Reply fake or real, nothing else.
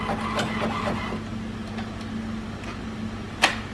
real